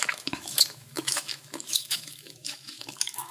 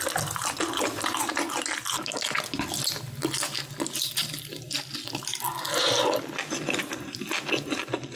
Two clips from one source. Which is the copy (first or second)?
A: first